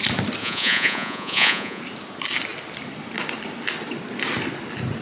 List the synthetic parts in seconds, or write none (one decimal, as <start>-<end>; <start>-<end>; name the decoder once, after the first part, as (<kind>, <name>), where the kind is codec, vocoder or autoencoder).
0.4-1.8 (vocoder, Vocos)